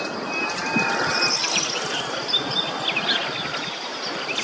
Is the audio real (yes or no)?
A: yes